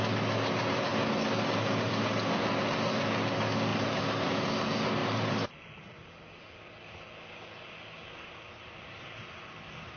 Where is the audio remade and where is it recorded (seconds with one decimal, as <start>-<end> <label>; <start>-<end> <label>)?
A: 0.0-10.0 recorded